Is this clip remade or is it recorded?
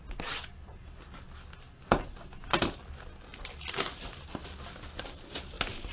recorded